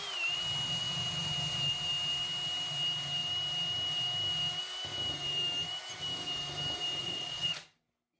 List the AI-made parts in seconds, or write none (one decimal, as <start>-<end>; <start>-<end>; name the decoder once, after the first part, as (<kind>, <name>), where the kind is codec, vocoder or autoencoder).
7.0-7.6 (vocoder, Vocos)